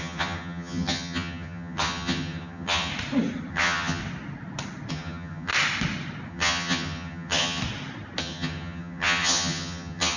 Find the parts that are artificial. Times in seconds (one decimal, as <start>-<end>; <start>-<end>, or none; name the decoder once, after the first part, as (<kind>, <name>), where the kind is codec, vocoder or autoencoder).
0.0-2.9 (vocoder, HiFi-GAN); 3.5-4.0; 4.9-5.5; 6.3-7.6; 8.2-10.2